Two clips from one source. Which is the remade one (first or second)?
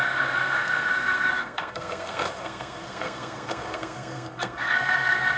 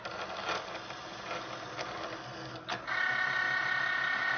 first